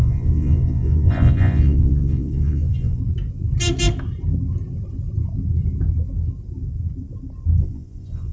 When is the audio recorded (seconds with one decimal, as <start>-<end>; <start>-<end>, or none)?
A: 3.0-7.6